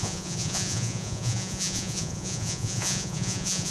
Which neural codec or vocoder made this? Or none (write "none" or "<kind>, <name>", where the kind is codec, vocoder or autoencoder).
vocoder, Vocos